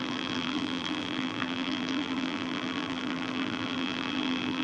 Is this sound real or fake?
fake